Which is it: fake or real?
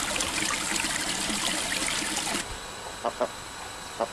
real